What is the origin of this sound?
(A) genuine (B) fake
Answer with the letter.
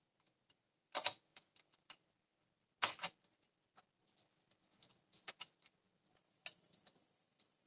A